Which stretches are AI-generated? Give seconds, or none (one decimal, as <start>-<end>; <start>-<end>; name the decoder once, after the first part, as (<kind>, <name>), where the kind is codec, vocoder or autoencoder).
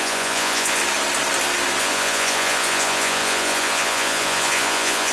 0.0-0.8 (vocoder, Vocos); 1.8-5.1